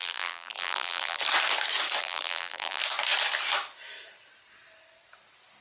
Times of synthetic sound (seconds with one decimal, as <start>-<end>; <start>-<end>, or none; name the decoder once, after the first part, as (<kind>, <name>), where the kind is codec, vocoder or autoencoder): 0.0-1.2 (vocoder, BigVGAN v2); 2.0-2.8